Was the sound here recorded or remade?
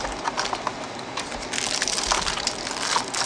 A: recorded